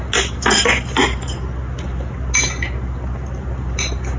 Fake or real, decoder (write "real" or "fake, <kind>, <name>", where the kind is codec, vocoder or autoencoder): real